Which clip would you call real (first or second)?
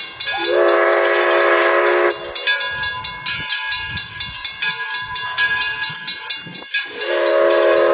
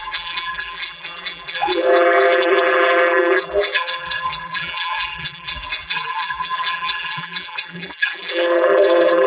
first